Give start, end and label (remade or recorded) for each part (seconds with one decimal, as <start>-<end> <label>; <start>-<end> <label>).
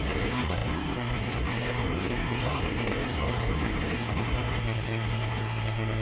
0.0-6.0 remade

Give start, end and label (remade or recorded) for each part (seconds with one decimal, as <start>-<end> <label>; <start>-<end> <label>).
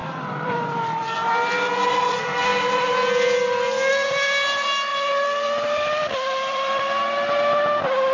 0.0-1.3 remade; 1.3-4.9 recorded; 4.9-7.0 remade; 7.0-8.1 recorded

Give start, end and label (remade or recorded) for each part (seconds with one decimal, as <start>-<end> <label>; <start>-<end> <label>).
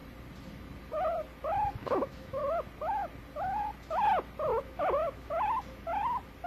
0.0-1.8 recorded; 1.8-2.4 remade; 2.4-4.5 recorded; 4.5-5.3 remade; 5.3-6.5 recorded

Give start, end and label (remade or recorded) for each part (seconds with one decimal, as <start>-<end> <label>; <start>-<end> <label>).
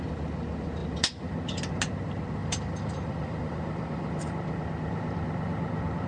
0.0-2.4 recorded; 2.4-4.2 remade; 4.2-6.1 recorded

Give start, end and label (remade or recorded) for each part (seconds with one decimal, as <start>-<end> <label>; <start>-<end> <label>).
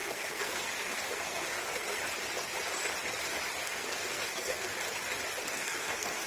0.0-2.0 remade; 2.0-3.6 recorded; 3.6-4.7 remade; 4.7-5.5 recorded; 5.5-6.3 remade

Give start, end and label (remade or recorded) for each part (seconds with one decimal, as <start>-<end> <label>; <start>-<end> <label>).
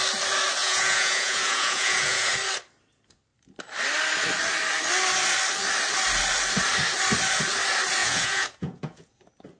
0.0-0.6 recorded; 0.6-2.3 remade; 2.3-8.0 recorded; 8.0-9.1 remade; 9.1-9.6 recorded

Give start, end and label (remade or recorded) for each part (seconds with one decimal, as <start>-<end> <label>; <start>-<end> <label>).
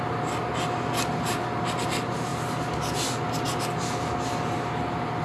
0.0-5.2 recorded